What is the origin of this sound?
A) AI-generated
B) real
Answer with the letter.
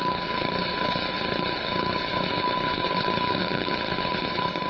A